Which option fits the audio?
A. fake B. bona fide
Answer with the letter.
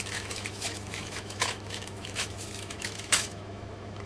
A